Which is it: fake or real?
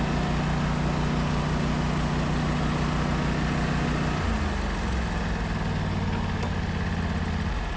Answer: real